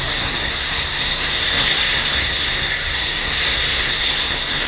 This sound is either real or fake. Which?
fake